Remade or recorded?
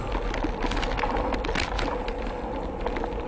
recorded